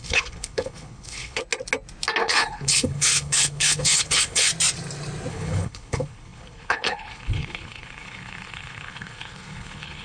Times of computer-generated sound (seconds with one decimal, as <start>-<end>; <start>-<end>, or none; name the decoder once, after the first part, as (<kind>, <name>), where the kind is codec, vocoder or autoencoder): 0.0-1.4 (codec, HILCodec); 2.2-4.5; 5.3-10.0